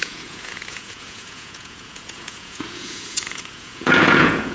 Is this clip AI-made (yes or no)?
yes